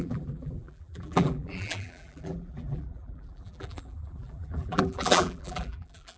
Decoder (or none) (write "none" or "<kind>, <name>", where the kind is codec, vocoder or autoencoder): vocoder, BigVGAN v2